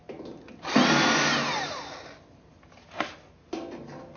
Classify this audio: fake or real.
real